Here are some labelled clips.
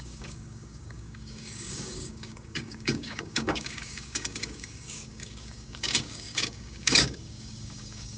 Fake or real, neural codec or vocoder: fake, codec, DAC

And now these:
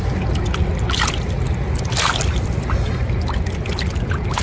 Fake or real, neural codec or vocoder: real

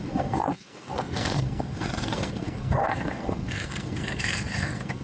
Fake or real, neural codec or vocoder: fake, codec, SNAC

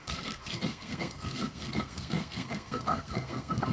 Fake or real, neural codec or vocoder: fake, codec, SNAC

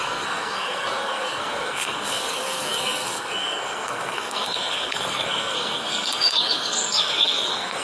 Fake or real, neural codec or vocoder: fake, codec, SNAC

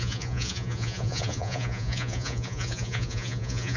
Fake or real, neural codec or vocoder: fake, vocoder, Vocos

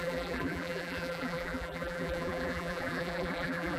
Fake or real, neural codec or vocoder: fake, vocoder, BigVGAN v2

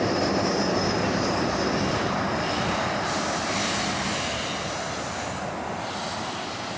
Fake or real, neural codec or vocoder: real